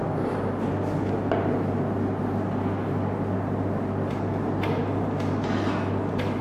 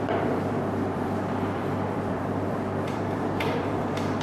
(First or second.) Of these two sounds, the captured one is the first